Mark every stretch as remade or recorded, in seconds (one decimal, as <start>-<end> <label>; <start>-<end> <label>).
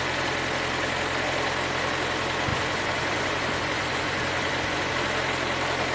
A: 0.0-2.5 recorded; 2.5-4.9 remade; 4.9-5.9 recorded